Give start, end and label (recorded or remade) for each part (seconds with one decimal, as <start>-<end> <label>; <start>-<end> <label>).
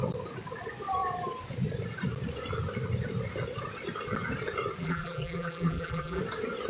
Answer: 0.0-4.8 recorded; 4.8-6.2 remade; 6.2-6.7 recorded